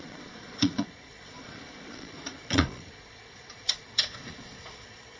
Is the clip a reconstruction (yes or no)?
yes